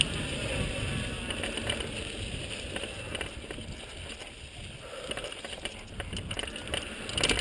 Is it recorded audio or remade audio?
recorded